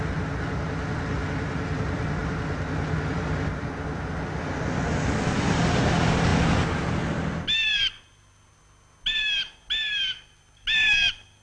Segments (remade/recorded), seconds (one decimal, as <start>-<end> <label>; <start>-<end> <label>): 0.0-11.4 recorded